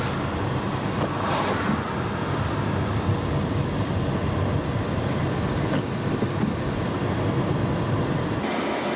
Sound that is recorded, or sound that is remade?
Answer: recorded